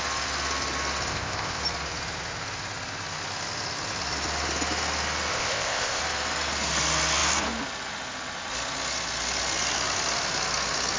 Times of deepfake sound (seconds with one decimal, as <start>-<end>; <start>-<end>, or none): 1.1-1.6; 5.3-6.0